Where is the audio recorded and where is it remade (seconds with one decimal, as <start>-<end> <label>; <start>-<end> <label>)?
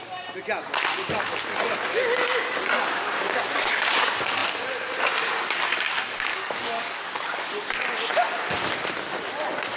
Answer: 0.0-6.3 recorded; 6.3-7.5 remade; 7.5-9.8 recorded